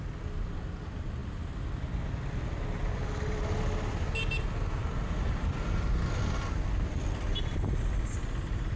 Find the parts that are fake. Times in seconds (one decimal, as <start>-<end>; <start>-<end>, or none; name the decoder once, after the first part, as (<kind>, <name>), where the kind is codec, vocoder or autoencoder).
none